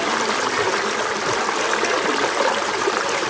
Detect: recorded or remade recorded